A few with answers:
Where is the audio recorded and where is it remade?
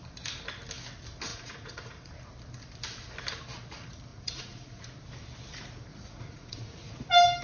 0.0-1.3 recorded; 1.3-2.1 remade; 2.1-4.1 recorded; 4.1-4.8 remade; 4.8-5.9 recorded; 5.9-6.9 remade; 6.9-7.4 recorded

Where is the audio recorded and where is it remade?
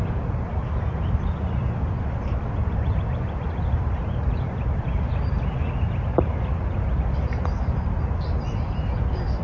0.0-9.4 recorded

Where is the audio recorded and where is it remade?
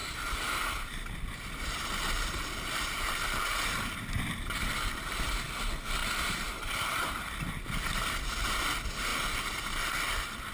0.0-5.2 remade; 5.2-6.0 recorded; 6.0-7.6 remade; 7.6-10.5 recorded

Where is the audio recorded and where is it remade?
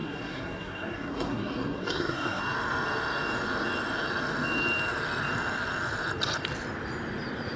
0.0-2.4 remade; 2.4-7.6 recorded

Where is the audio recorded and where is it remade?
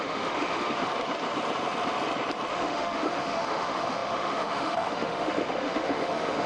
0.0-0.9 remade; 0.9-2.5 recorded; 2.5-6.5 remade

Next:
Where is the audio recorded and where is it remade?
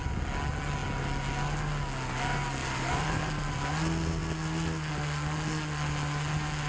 0.0-2.6 recorded; 2.6-3.6 remade; 3.6-6.7 recorded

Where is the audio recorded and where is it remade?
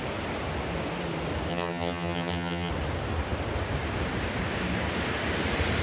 0.0-1.5 recorded; 1.5-2.7 remade; 2.7-5.8 recorded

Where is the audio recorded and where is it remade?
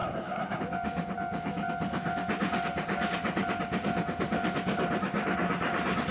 0.0-0.6 remade; 0.6-6.1 recorded